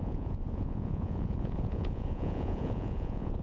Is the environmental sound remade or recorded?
remade